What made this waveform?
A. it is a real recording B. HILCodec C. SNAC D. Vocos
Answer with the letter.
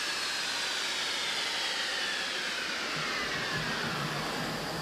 A